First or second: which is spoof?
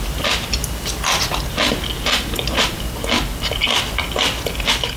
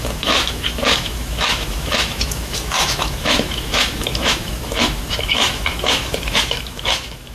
second